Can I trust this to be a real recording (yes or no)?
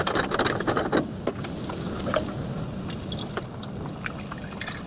yes